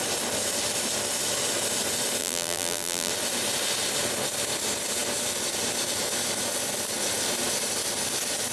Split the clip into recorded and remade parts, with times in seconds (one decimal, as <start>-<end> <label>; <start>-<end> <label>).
0.0-2.2 recorded; 2.2-3.1 remade; 3.1-8.5 recorded